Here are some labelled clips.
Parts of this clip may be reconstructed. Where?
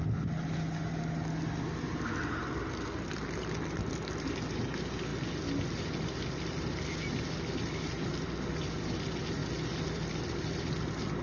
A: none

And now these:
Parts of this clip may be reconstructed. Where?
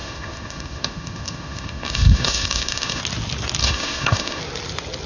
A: 0.0-3.0 (autoencoder, DAC-VAE); 3.6-4.4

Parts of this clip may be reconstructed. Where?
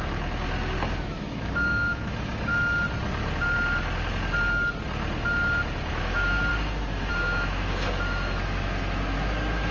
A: 1.1-2.5 (autoencoder, DAC-VAE); 5.9-6.5; 7.1-9.7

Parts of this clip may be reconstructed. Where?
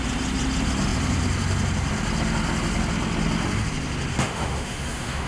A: 4.1-5.3 (autoencoder, DAC-VAE)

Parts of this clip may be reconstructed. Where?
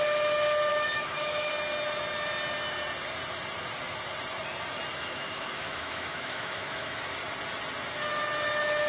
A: 0.7-1.5 (autoencoder, DAC-VAE); 4.9-7.0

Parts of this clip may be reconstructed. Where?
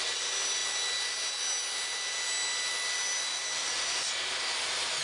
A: none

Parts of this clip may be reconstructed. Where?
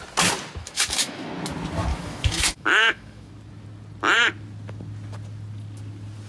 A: 0.6-1.3 (autoencoder, DAC-VAE); 1.9-3.3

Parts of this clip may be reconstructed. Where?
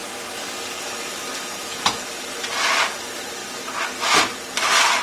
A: none